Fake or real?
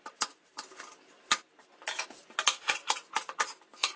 real